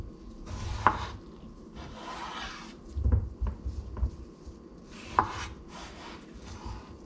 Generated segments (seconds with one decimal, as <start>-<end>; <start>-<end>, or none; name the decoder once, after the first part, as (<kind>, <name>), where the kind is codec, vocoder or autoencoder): none